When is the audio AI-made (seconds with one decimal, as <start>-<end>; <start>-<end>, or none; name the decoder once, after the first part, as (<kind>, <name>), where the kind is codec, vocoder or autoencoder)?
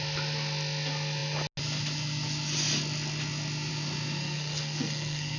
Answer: 4.2-5.4 (codec, SNAC)